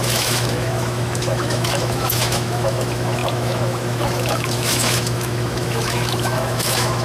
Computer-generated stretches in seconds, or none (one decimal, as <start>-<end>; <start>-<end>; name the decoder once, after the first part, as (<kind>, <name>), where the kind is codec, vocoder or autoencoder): 0.0-7.0 (autoencoder, DAC-VAE)